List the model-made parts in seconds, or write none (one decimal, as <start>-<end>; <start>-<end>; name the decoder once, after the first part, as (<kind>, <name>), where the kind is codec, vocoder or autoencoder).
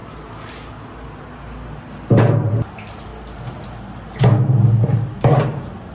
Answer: 2.3-3.1 (vocoder, BigVGAN v2)